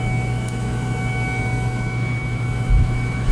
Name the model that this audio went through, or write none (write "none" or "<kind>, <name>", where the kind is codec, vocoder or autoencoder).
autoencoder, DAC-VAE